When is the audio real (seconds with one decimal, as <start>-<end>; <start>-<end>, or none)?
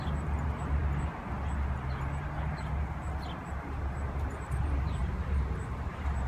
0.8-4.0